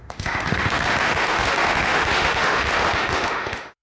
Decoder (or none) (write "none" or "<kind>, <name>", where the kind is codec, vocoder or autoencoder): autoencoder, DAC-VAE